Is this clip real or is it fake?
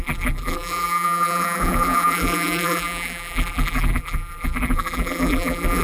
fake